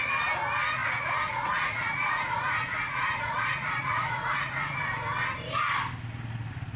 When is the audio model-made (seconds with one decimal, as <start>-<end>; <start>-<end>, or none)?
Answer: 0.8-4.8